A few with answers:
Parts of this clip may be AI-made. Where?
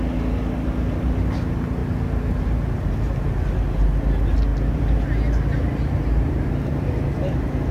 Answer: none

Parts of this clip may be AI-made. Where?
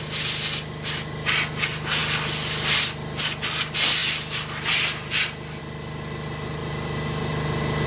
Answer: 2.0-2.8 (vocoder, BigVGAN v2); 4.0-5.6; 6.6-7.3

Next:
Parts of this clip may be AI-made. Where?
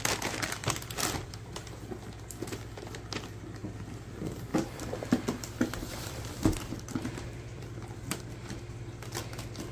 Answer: 0.6-1.5 (vocoder, BigVGAN v2); 4.5-8.2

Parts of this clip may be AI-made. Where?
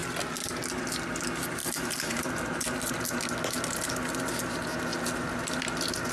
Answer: 1.6-2.9 (vocoder, BigVGAN v2)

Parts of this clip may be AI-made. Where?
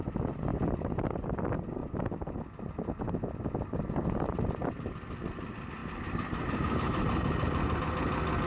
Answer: 0.5-1.1 (vocoder, BigVGAN v2); 1.8-2.4; 5.8-7.8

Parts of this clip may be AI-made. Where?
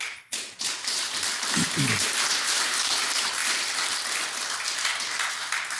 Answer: 0.0-3.4 (vocoder, BigVGAN v2); 5.3-5.8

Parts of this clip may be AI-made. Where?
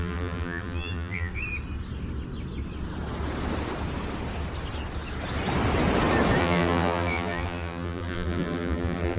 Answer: 0.0-1.3 (vocoder, BigVGAN v2); 6.4-9.2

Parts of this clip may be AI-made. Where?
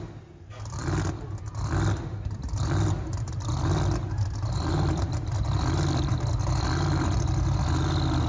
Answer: 2.1-7.1 (vocoder, BigVGAN v2)